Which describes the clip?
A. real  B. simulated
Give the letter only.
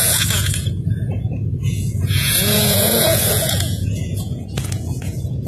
B